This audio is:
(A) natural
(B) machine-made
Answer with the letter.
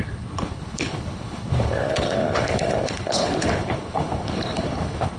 B